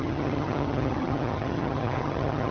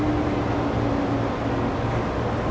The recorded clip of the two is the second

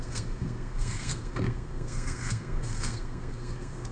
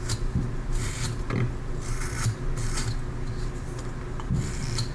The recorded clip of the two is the second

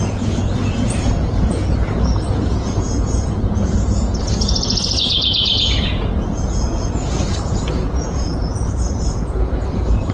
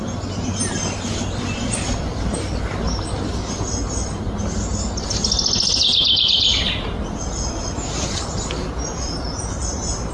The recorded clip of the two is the second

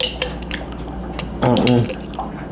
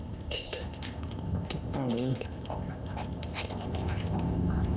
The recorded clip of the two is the first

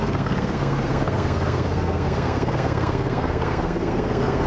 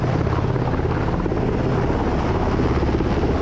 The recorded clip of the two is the second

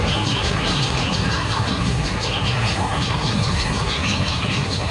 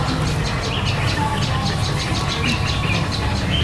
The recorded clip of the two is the second